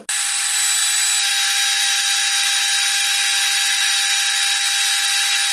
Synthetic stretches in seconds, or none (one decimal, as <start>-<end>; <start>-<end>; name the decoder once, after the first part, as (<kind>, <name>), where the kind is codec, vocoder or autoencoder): none